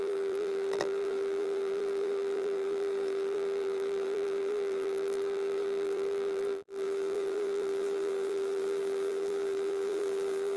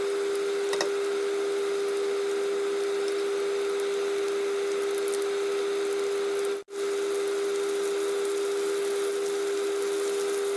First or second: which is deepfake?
first